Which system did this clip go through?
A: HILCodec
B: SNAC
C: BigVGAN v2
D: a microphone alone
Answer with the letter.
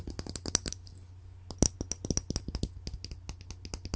D